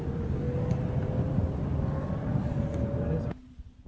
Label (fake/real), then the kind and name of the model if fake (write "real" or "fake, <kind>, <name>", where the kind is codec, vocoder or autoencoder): real